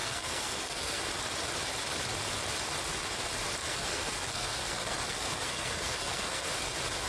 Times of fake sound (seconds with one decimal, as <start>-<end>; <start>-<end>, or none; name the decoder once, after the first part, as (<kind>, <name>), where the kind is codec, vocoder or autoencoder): 0.0-1.0 (codec, SNAC); 3.6-6.5